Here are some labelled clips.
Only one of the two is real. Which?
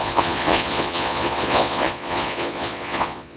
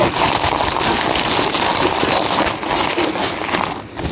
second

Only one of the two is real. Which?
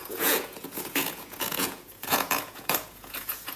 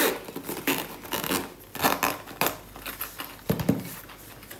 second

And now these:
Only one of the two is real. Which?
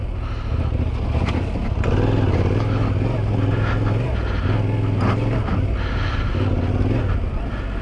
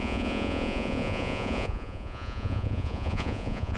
first